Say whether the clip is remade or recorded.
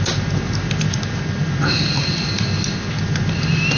recorded